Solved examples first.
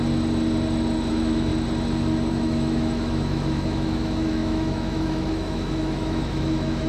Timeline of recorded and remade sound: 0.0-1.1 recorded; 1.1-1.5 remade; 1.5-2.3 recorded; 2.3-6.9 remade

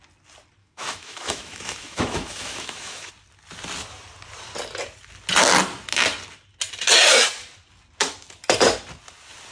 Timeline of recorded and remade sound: 0.0-0.6 recorded; 0.6-3.1 remade; 3.1-9.5 recorded

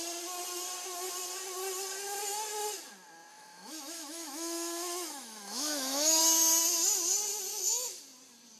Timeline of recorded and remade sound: 0.0-3.3 recorded; 3.3-6.2 remade; 6.2-7.5 recorded; 7.5-8.0 remade; 8.0-8.6 recorded

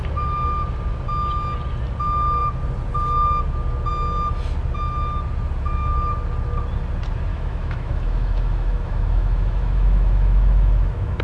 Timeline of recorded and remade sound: 0.0-7.3 recorded; 7.3-11.2 remade